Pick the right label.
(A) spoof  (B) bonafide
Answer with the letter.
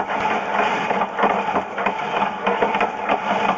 A